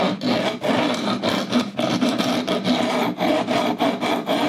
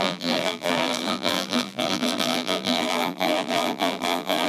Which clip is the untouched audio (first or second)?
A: first